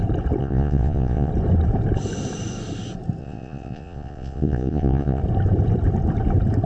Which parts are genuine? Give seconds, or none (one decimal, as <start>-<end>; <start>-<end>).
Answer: 0.0-0.4; 1.3-3.2; 5.2-6.7